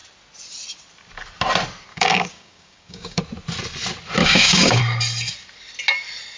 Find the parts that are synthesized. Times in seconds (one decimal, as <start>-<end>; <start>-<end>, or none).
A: 1.9-3.2; 4.2-4.8